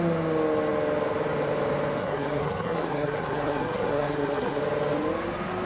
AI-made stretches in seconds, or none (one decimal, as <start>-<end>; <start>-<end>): 2.0-4.6